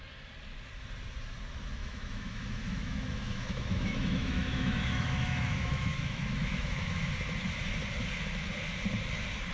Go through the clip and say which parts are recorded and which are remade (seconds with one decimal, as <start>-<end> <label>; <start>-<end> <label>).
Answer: 0.0-1.8 recorded; 1.8-7.0 remade; 7.0-9.5 recorded